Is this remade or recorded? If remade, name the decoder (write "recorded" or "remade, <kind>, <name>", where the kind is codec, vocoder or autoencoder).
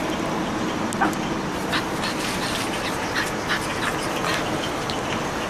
recorded